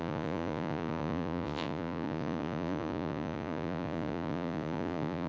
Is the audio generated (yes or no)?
yes